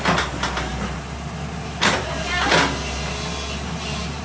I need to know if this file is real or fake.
real